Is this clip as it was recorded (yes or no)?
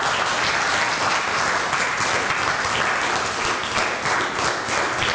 yes